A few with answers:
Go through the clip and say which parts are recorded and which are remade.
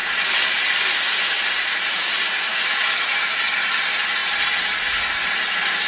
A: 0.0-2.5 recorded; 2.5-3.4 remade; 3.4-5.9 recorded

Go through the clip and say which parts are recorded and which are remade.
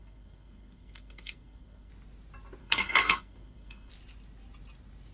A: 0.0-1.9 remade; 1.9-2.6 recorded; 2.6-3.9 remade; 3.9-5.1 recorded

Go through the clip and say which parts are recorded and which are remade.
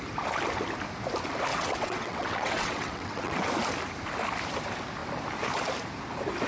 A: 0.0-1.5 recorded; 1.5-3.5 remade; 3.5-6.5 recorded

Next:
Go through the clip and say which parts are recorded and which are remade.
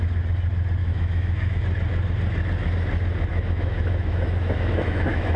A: 0.0-0.8 recorded; 0.8-1.6 remade; 1.6-3.3 recorded; 3.3-5.4 remade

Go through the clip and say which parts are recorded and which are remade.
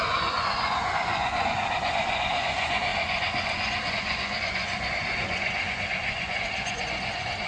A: 0.0-7.5 remade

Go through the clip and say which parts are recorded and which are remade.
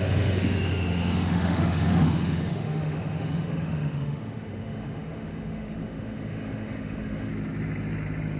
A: 0.0-7.3 remade; 7.3-8.4 recorded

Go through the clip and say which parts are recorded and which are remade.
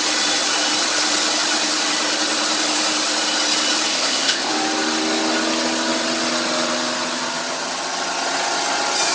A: 0.0-3.9 recorded; 3.9-4.5 remade; 4.5-9.1 recorded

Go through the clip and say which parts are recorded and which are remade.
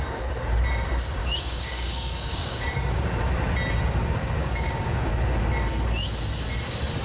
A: 0.0-1.2 recorded; 1.2-3.3 remade; 3.3-4.4 recorded; 4.4-5.1 remade; 5.1-7.0 recorded